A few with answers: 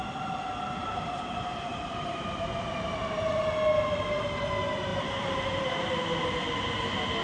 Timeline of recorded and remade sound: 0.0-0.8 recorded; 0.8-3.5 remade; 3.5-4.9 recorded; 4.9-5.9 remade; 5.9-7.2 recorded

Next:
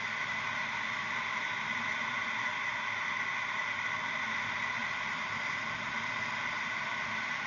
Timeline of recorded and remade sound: 0.0-7.5 recorded

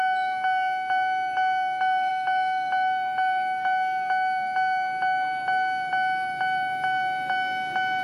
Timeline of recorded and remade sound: 0.0-8.0 recorded

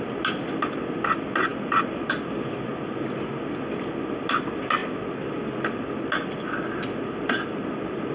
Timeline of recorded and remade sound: 0.0-1.5 recorded; 1.5-2.1 remade; 2.1-8.1 recorded